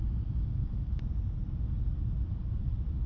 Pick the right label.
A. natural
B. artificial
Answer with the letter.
B